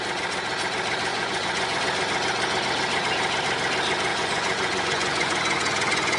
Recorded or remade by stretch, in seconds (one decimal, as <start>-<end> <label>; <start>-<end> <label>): 0.0-1.1 recorded; 1.1-1.8 remade; 1.8-4.1 recorded; 4.1-6.2 remade